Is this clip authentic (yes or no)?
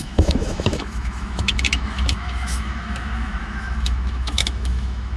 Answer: no